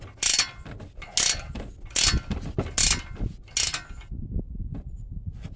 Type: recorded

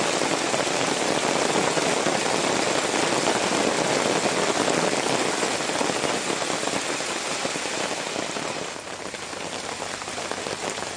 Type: recorded